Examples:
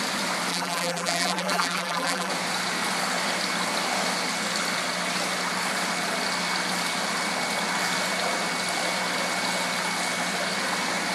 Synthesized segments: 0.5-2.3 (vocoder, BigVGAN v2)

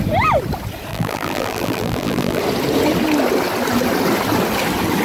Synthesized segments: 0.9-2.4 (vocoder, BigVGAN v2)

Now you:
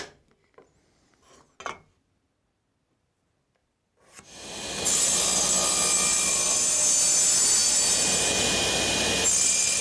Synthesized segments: 3.6-4.8 (vocoder, BigVGAN v2); 6.1-6.8

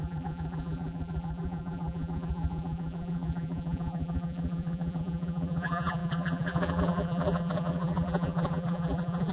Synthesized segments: 0.0-9.3 (vocoder, BigVGAN v2)